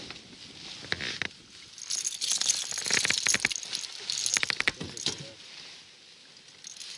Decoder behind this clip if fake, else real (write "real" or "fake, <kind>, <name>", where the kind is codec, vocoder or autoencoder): real